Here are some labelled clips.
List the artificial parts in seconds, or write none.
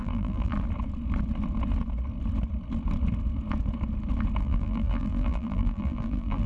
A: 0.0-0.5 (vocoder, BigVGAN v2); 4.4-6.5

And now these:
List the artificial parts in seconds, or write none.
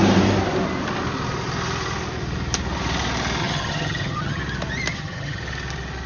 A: 3.4-4.4 (vocoder, HiFi-GAN); 4.9-5.4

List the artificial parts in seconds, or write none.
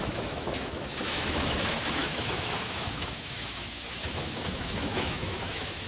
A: 0.0-5.9 (autoencoder, DAC-VAE)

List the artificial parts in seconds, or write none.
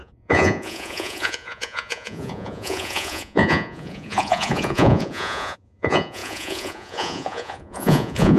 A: 0.0-8.4 (vocoder, Vocos)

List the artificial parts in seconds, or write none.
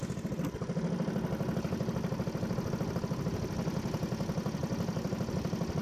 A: 4.6-5.1 (vocoder, BigVGAN v2)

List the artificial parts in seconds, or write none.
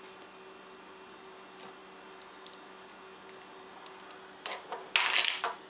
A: none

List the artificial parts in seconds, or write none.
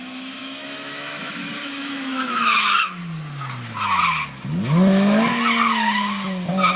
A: 0.0-3.0 (autoencoder, DAC-VAE)